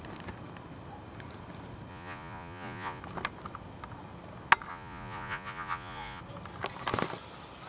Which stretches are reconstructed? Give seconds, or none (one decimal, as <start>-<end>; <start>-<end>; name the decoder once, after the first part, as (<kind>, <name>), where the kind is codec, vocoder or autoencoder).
1.9-3.0 (vocoder, Vocos); 4.7-6.2